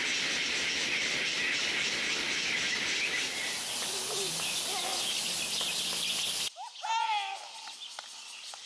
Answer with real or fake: real